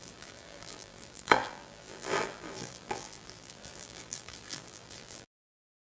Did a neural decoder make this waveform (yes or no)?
yes